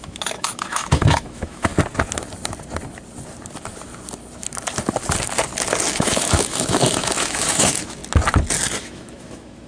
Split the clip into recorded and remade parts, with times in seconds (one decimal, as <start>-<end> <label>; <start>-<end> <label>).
0.0-1.7 remade; 1.7-5.9 recorded; 5.9-8.0 remade; 8.0-8.8 recorded; 8.8-9.7 remade